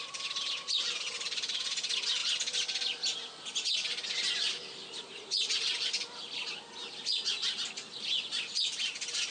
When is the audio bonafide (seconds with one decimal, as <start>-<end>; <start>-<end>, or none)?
0.0-9.3